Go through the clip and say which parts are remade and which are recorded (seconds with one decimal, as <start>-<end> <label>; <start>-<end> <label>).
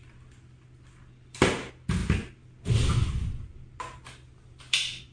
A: 0.0-5.1 recorded